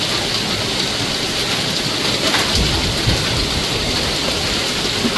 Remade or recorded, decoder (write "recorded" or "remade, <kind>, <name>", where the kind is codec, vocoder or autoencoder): recorded